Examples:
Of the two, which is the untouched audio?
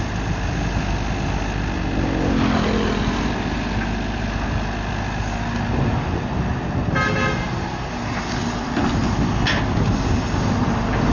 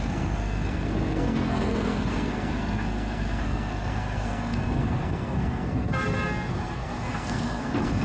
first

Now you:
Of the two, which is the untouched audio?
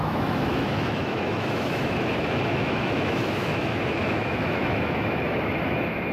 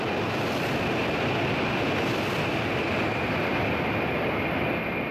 second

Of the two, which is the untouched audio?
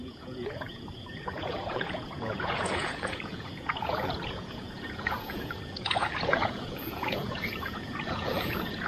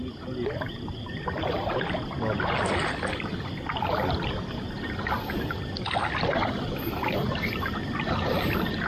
second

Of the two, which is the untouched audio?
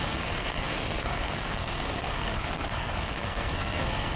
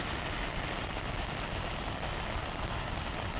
second